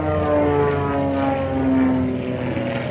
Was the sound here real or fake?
real